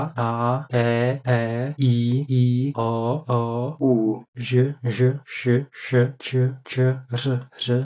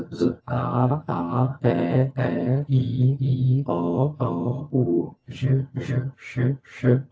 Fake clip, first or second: second